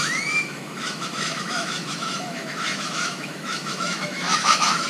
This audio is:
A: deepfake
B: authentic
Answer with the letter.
A